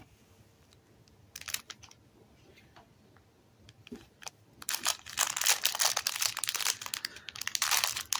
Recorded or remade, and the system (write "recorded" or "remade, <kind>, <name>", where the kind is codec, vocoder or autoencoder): recorded